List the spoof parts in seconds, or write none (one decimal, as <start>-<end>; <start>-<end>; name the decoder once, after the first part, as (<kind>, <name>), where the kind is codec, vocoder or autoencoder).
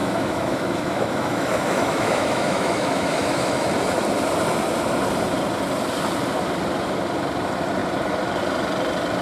0.0-3.7 (autoencoder, DAC-VAE)